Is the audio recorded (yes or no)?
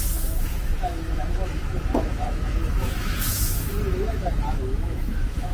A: no